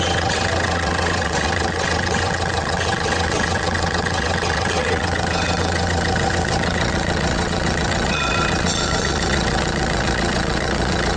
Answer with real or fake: fake